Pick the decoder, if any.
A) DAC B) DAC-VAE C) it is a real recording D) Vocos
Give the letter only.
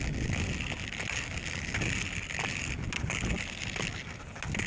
C